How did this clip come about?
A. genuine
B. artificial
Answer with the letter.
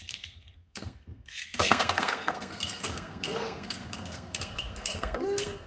B